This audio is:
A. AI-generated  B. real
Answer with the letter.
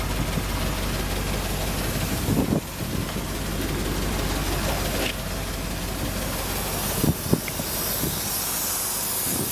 B